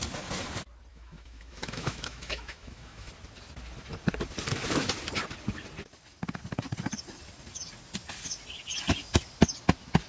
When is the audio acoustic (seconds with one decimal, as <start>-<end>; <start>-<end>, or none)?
0.0-0.9; 3.1-10.1